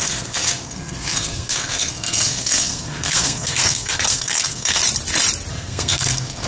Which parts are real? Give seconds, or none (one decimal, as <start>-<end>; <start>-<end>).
4.8-5.5